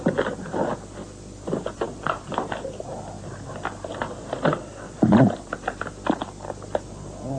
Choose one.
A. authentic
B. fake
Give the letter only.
A